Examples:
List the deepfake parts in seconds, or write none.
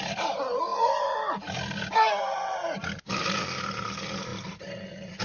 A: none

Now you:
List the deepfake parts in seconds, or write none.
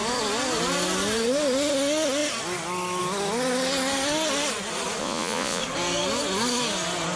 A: 5.0-5.6 (vocoder, Vocos)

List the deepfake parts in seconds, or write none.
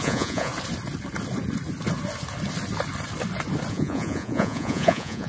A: 0.0-0.5 (vocoder, Vocos); 3.7-5.3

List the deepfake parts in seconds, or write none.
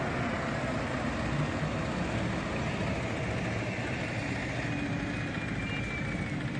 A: none